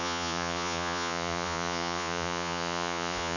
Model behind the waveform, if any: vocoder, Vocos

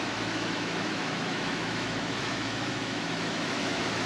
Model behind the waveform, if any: autoencoder, DAC-VAE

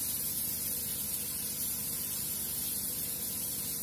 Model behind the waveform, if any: none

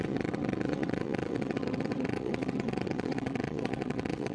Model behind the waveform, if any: vocoder, WaveNeXt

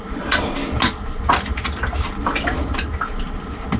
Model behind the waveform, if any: none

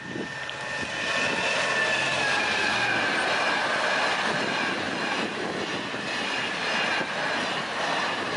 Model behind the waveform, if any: none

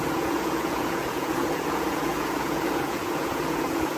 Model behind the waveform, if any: vocoder, Vocos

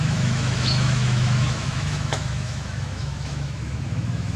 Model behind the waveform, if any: autoencoder, DAC-VAE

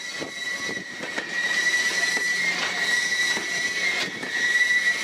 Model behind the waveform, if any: vocoder, BigVGAN v2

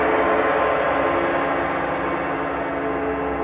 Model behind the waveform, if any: none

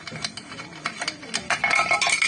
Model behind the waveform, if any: none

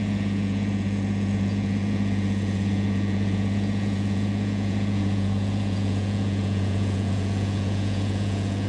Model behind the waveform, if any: vocoder, Vocos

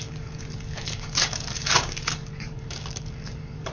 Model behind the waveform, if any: codec, DAC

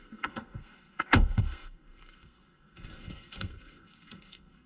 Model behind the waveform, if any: codec, SNAC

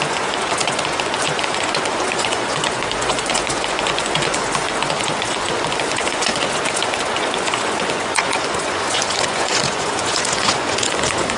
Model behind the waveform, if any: vocoder, Vocos